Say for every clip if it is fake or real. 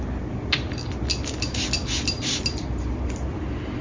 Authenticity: real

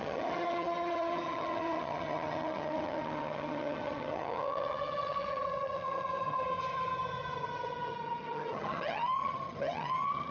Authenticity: fake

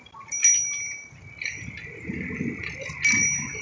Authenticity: real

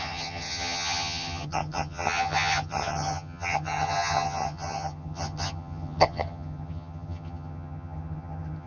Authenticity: fake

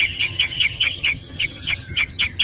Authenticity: fake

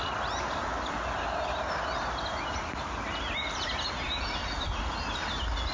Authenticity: real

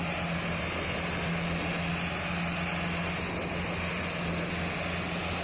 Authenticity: real